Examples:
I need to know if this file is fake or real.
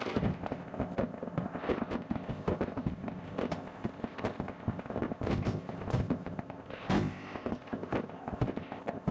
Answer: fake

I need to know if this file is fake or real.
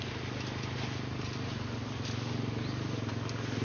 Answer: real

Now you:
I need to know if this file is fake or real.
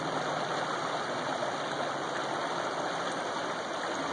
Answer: real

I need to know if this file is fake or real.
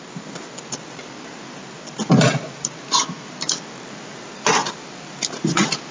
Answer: real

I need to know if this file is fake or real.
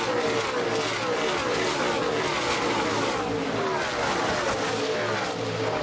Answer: real